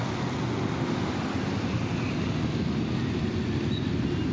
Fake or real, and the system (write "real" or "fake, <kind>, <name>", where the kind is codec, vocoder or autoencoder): real